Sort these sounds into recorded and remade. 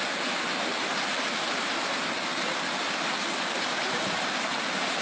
recorded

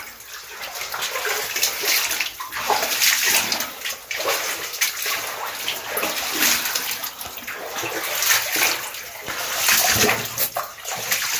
recorded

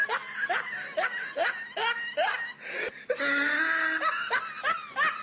recorded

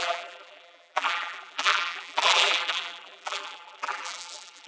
remade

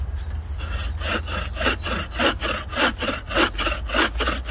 recorded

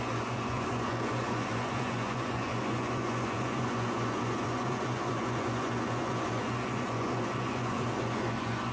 remade